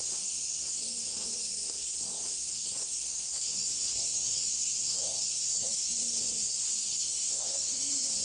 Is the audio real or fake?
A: fake